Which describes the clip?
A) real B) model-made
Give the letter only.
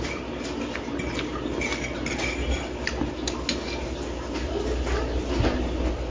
A